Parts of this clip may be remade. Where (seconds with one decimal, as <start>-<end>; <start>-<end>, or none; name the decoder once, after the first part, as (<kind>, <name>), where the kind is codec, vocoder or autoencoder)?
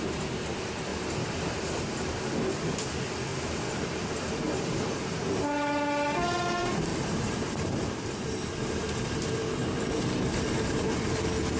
0.9-2.1 (vocoder, BigVGAN v2); 3.3-4.4; 6.9-9.0